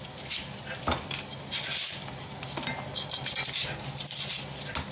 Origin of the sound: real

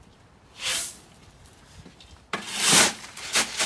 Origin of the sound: fake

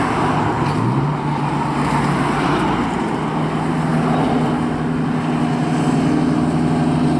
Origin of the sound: real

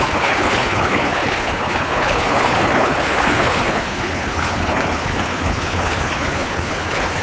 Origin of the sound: fake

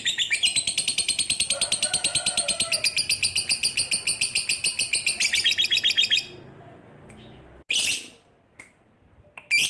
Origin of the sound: real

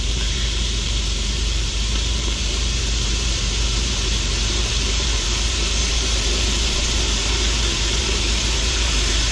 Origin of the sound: fake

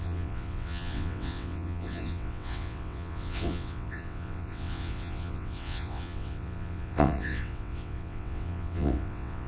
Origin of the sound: fake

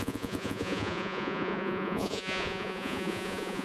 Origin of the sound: fake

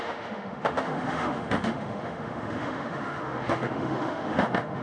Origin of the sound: fake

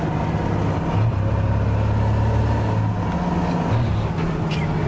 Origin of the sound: real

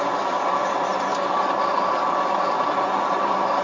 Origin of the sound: real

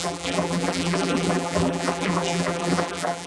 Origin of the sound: fake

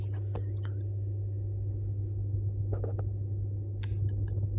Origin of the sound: real